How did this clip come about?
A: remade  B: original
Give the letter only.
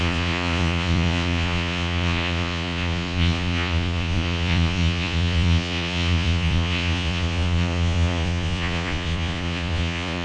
A